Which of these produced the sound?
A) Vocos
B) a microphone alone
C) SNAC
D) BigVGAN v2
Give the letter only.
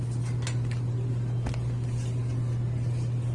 B